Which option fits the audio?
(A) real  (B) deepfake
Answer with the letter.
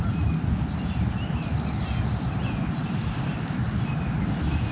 A